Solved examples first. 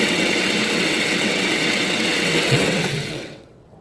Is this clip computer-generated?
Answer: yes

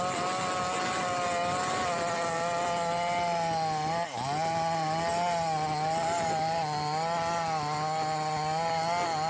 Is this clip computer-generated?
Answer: no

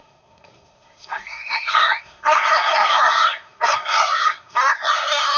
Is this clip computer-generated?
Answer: yes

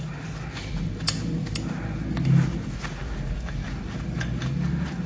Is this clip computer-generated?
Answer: no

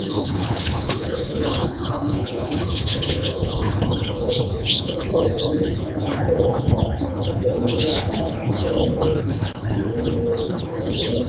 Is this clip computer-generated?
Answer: yes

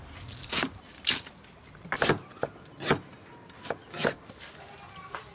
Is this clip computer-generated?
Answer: no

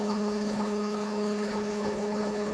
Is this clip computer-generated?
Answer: yes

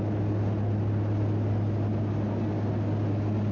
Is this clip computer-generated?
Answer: no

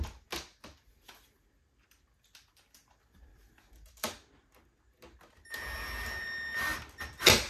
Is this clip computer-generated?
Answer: no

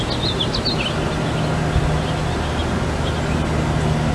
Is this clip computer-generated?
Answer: no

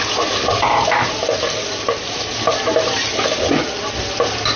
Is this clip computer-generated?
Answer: no